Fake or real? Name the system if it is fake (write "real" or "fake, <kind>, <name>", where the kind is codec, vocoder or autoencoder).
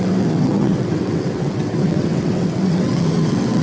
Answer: fake, vocoder, WaveNeXt